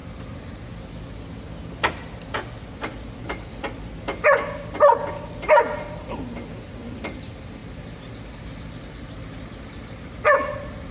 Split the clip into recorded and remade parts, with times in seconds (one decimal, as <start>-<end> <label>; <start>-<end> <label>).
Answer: 0.0-10.9 recorded